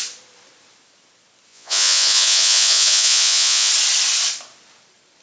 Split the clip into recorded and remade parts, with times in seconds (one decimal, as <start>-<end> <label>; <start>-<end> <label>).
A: 0.0-1.5 recorded; 1.5-3.7 remade; 3.7-5.2 recorded